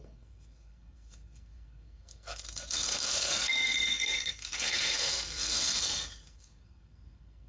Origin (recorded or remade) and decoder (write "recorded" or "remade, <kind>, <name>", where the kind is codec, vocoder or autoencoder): remade, codec, SNAC